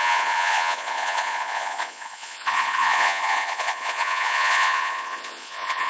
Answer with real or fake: fake